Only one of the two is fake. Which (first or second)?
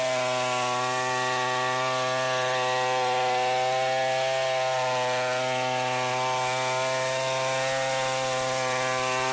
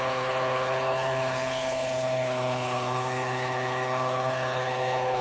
second